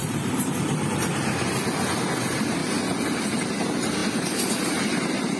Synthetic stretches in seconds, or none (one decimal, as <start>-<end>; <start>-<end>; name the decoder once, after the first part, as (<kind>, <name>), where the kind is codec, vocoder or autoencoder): 0.0-1.6 (vocoder, BigVGAN v2)